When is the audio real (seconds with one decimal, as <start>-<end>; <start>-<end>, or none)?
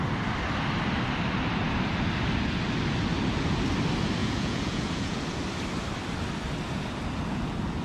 0.0-4.2; 5.2-7.8